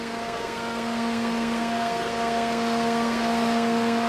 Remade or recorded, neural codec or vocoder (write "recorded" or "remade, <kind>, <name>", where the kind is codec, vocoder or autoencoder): remade, codec, SNAC